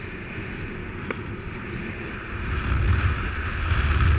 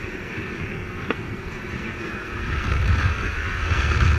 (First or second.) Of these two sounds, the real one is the first